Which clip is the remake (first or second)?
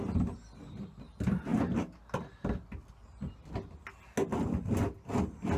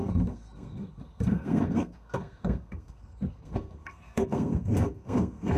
second